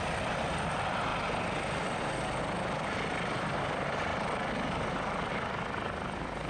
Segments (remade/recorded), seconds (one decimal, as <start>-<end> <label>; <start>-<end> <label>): 0.0-1.1 remade; 1.1-3.4 recorded; 3.4-4.1 remade; 4.1-6.5 recorded